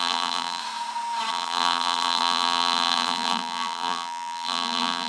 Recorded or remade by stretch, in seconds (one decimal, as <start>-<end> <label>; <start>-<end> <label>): 0.0-0.6 remade; 0.6-1.3 recorded; 1.3-5.1 remade